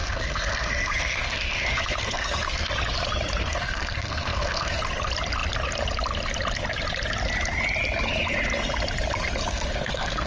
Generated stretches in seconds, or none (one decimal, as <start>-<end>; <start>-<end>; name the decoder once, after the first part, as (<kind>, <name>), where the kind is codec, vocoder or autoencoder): 0.0-2.7 (codec, SNAC); 3.4-4.8; 9.5-10.3